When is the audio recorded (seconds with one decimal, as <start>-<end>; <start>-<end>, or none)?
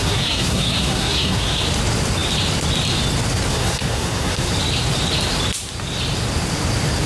1.6-3.5; 4.5-7.1